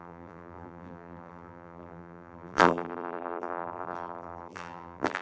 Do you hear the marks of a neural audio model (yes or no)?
yes